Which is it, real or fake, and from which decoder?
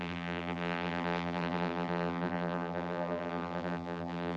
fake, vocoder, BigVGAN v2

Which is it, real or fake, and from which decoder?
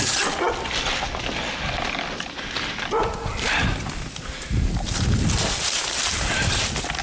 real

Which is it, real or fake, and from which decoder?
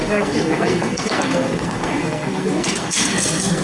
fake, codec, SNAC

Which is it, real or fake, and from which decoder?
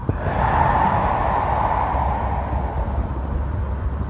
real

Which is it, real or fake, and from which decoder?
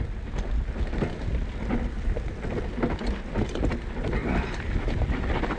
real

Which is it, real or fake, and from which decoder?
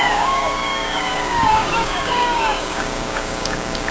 fake, codec, DAC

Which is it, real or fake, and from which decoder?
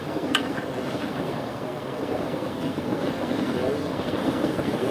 fake, codec, SNAC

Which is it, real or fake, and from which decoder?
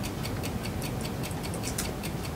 real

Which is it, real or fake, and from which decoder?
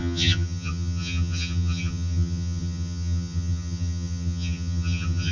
fake, vocoder, HiFi-GAN